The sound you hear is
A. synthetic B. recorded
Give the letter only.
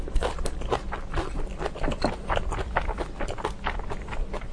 B